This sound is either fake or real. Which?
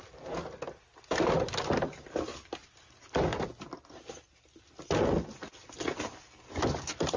real